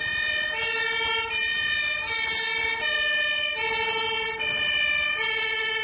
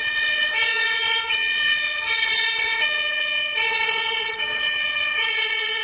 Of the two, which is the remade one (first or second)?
second